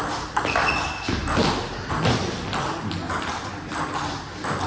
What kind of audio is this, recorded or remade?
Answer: recorded